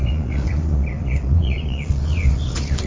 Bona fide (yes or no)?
no